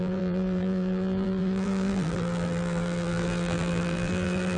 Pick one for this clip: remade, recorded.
remade